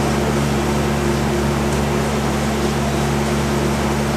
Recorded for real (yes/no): yes